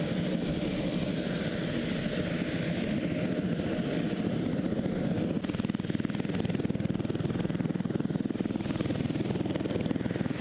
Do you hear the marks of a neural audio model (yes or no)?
no